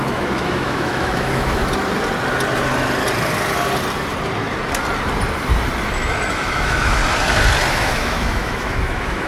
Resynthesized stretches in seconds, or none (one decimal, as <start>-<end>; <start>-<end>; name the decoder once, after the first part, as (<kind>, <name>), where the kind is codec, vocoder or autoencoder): 0.0-1.6 (autoencoder, DAC-VAE); 6.3-7.0; 7.7-9.3